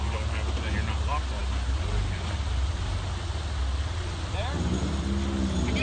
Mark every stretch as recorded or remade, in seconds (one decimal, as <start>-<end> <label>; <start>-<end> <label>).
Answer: 0.0-5.8 recorded